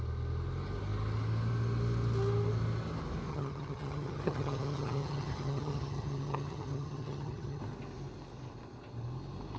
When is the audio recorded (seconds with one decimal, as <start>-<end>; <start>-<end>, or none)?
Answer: 0.0-3.3; 7.6-9.6